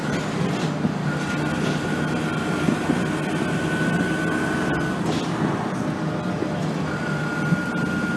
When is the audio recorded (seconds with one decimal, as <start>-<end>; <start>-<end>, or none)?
0.0-8.2